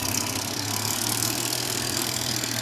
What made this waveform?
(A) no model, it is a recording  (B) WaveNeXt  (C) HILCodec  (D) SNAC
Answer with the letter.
D